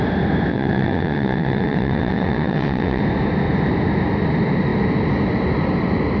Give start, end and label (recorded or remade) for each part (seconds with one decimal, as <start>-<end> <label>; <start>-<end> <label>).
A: 0.0-0.5 recorded; 0.5-3.0 remade; 3.0-6.2 recorded